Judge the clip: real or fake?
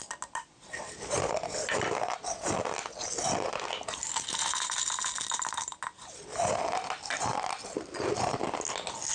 real